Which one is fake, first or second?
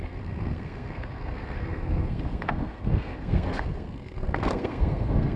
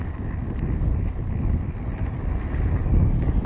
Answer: first